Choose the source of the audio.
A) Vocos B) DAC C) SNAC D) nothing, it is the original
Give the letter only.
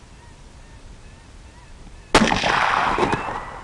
D